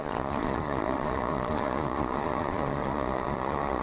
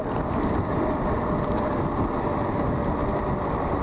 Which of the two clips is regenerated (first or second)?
first